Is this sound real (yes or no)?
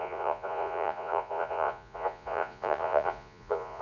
no